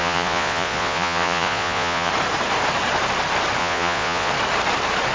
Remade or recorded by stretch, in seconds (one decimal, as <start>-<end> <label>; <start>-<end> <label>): 0.0-2.1 remade; 2.1-3.6 recorded; 3.6-4.3 remade; 4.3-5.1 recorded